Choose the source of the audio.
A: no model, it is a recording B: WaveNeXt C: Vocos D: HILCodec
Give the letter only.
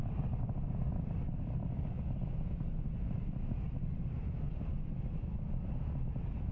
A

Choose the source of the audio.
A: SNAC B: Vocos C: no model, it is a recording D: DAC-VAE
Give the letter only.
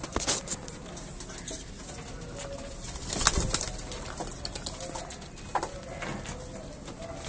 C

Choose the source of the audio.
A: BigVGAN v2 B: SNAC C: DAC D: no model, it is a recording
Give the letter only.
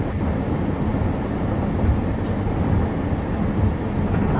D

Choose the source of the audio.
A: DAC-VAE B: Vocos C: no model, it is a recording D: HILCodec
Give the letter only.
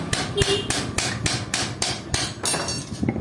C